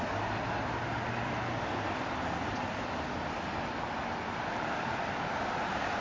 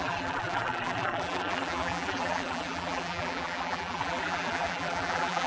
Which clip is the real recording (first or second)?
first